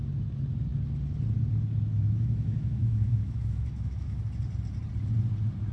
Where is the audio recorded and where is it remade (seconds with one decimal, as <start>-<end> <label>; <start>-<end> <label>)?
0.0-1.9 recorded; 1.9-4.2 remade; 4.2-5.7 recorded